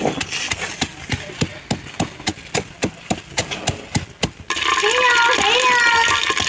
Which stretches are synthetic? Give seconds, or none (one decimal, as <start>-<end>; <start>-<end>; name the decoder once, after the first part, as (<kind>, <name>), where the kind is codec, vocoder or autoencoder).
none